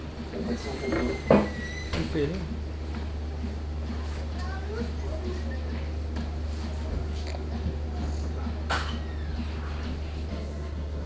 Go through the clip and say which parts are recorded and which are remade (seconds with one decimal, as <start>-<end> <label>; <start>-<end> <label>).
0.0-10.3 recorded; 10.3-11.1 remade